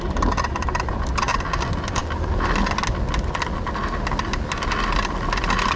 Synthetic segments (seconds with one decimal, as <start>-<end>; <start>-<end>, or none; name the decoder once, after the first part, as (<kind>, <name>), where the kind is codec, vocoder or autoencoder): none